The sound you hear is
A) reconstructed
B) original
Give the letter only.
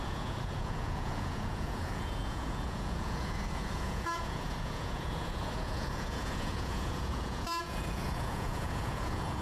A